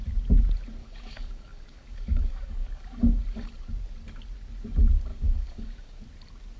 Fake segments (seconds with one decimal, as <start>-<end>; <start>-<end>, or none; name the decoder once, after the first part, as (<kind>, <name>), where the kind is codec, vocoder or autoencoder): 0.8-3.2 (codec, DAC); 5.1-6.0